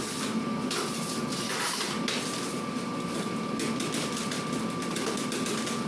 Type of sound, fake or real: real